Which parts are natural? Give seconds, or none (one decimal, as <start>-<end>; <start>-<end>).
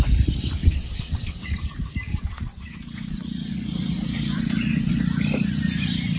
0.0-0.6; 1.6-2.1; 5.0-6.2